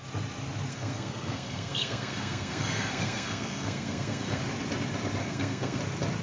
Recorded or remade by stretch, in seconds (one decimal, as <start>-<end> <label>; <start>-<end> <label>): 0.0-0.7 recorded; 0.7-4.4 remade; 4.4-5.2 recorded; 5.2-5.8 remade; 5.8-6.2 recorded